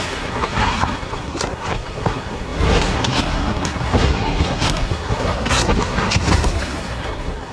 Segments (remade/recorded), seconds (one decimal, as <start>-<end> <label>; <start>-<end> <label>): 0.0-7.5 remade